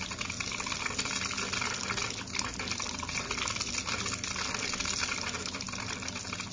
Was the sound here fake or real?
real